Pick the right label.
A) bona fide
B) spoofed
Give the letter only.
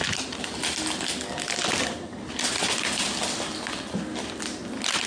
A